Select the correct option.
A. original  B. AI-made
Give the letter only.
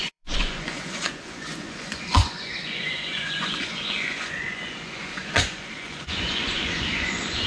B